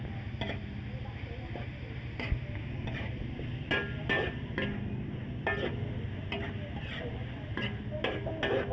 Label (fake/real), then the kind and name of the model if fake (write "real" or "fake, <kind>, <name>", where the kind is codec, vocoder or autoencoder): real